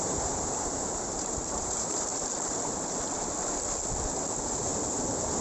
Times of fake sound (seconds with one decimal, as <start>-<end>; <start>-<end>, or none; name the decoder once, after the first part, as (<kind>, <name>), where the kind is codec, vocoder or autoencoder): 0.0-2.1 (vocoder, BigVGAN v2)

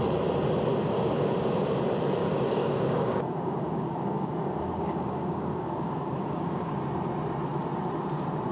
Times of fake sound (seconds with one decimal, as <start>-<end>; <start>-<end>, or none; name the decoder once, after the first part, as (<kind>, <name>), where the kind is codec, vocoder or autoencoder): 0.7-1.8 (codec, DAC); 2.2-6.7

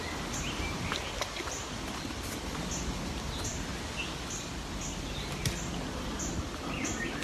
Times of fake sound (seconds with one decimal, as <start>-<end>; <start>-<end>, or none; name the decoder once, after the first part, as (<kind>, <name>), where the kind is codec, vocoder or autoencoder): none

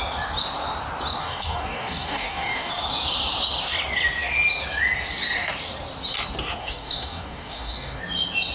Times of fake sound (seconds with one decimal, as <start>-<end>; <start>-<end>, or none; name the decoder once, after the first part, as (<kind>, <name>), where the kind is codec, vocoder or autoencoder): 1.2-2.7 (codec, DAC); 6.6-8.0